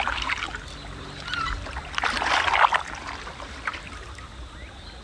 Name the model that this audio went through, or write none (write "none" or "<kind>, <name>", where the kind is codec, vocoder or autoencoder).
none